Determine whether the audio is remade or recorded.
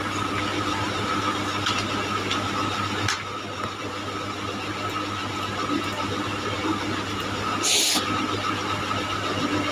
recorded